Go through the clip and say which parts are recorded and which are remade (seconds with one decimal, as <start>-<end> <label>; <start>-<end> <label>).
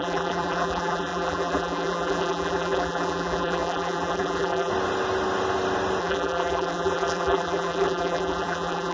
0.0-4.7 remade; 4.7-6.0 recorded; 6.0-8.9 remade